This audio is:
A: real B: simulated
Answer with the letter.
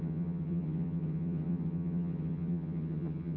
B